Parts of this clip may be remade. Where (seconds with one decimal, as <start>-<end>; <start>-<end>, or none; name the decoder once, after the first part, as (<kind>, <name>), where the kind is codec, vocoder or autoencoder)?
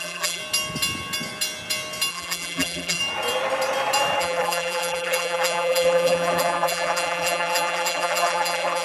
0.0-0.4 (vocoder, BigVGAN v2); 2.1-3.0; 4.2-8.8